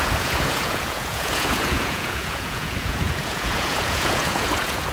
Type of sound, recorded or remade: remade